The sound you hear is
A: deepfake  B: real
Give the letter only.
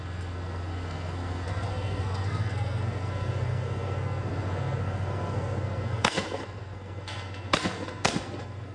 A